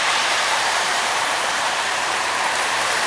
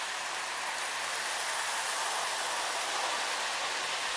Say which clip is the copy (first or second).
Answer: first